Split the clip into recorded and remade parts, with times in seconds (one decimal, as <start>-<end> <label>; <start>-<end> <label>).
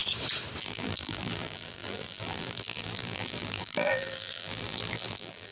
0.0-0.6 recorded; 0.6-5.5 remade